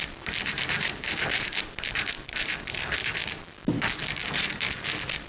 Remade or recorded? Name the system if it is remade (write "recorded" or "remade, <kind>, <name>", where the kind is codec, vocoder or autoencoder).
remade, vocoder, BigVGAN v2